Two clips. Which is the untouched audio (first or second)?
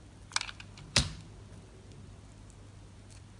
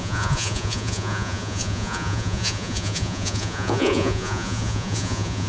first